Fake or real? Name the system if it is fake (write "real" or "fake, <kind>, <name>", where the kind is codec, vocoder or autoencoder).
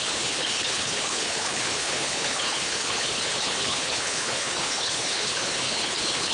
fake, codec, HILCodec